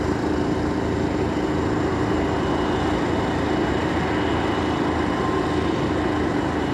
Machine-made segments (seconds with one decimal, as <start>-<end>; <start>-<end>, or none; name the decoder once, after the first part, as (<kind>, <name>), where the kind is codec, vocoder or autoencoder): none